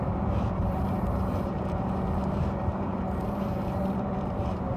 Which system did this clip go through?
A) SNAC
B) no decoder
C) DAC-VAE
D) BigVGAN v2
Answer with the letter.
D